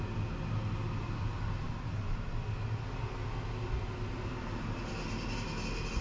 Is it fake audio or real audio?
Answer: real